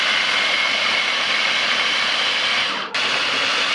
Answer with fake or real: real